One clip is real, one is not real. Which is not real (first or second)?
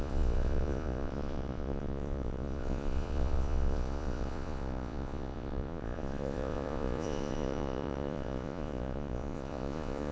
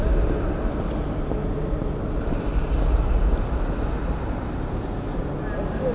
first